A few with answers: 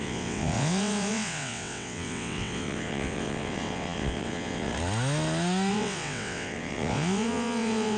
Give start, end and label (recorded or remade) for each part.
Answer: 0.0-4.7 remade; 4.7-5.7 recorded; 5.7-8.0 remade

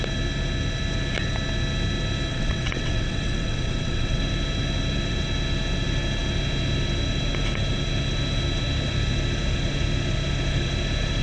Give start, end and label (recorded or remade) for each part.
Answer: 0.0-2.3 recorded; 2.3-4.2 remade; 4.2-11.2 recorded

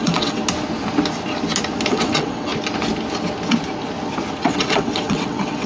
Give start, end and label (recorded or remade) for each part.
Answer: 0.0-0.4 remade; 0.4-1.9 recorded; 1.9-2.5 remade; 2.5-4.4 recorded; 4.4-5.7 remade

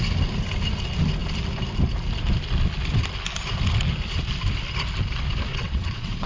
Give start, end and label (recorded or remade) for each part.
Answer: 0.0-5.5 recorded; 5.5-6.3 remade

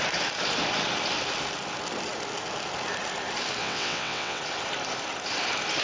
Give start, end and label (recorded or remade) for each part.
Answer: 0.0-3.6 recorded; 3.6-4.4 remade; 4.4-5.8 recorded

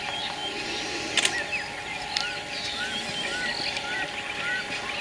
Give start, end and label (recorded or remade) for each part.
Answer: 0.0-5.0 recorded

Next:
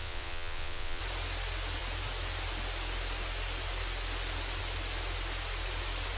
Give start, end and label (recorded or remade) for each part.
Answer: 0.0-1.0 remade; 1.0-6.2 recorded

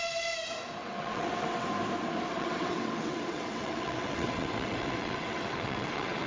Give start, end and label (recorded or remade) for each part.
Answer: 0.0-0.8 recorded; 0.8-1.7 remade; 1.7-2.3 recorded; 2.3-6.3 remade